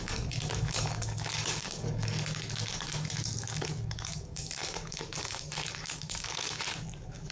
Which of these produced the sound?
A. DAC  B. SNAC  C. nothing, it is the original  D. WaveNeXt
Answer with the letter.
A